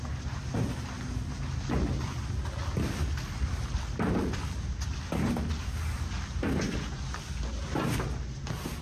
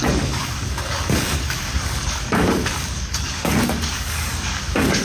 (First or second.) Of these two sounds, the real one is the first